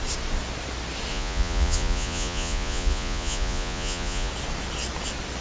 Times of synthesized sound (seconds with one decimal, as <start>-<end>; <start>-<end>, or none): 1.1-4.3